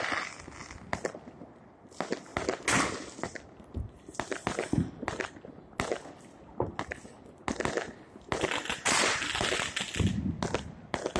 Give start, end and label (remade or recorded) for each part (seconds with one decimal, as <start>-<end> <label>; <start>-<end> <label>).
0.0-11.2 recorded